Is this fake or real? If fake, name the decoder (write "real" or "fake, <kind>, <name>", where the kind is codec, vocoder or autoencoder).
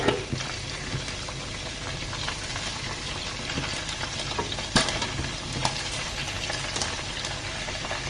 real